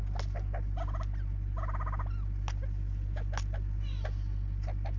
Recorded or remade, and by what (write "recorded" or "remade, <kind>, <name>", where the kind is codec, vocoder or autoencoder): recorded